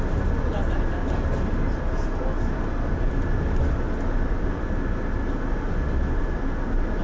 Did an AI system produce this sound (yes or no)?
no